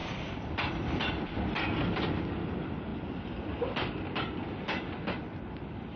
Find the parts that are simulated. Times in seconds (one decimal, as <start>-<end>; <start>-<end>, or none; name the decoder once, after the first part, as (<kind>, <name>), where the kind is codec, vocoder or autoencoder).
2.3-2.9 (vocoder, BigVGAN v2); 5.4-6.0